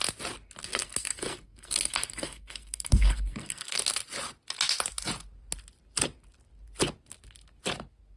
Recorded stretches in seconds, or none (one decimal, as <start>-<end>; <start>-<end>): 0.0-0.6; 3.8-8.2